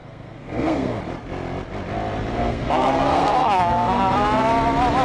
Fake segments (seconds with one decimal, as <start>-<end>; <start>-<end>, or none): 0.0-1.0; 2.3-4.5